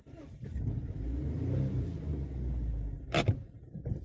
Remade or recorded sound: recorded